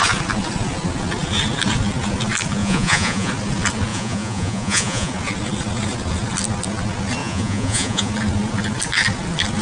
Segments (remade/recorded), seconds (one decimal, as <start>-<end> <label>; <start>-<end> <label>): 0.0-2.6 recorded; 2.6-3.3 remade; 3.3-3.9 recorded; 3.9-5.1 remade; 5.1-7.2 recorded; 7.2-8.1 remade; 8.1-9.6 recorded